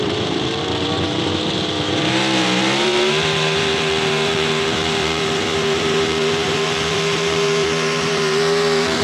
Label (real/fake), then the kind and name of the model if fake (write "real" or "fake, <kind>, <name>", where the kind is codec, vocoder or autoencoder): fake, vocoder, BigVGAN v2